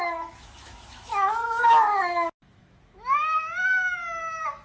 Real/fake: fake